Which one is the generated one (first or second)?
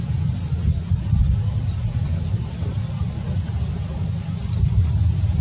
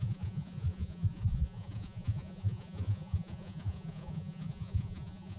second